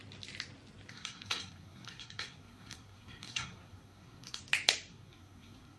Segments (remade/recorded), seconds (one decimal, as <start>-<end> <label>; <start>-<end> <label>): 0.0-0.9 recorded; 0.9-4.4 remade; 4.4-4.9 recorded; 4.9-5.8 remade